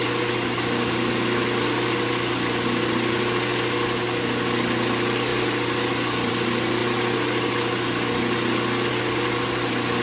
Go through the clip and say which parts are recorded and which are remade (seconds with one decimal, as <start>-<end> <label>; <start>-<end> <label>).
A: 0.0-10.0 recorded